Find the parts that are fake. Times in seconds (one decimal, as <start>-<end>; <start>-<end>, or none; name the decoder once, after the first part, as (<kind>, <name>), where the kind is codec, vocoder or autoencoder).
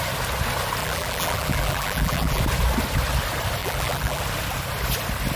0.8-2.4 (vocoder, BigVGAN v2); 3.6-4.2